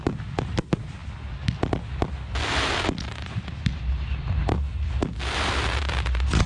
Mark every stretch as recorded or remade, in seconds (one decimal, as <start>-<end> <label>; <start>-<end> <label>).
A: 0.0-1.0 remade; 1.0-2.4 recorded; 2.4-6.5 remade